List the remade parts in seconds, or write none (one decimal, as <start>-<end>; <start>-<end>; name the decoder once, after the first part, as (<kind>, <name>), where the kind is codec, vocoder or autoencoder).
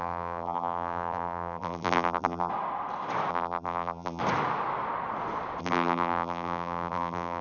0.0-2.5 (vocoder, BigVGAN v2); 3.3-4.2; 5.6-7.4